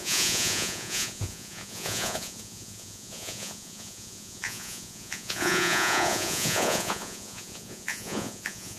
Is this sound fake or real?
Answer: fake